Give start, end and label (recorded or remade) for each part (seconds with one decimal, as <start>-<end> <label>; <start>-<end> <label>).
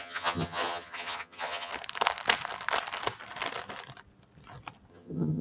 0.0-1.7 remade; 1.7-4.9 recorded; 4.9-5.4 remade